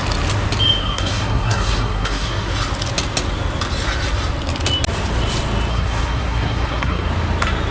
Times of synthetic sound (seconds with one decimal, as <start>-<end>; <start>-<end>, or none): 0.8-2.5; 5.7-7.1

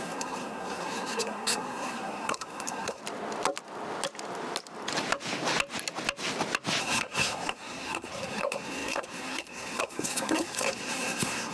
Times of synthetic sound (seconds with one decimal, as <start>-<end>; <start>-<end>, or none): 0.0-3.0; 6.8-11.5

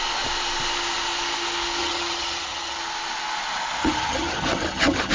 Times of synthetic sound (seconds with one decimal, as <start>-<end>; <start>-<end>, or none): 1.8-2.8; 3.8-5.1